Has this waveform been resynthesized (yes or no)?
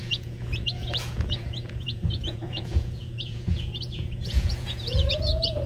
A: yes